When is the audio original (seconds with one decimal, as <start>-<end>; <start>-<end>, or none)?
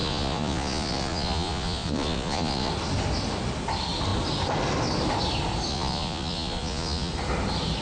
2.7-5.7; 7.1-7.8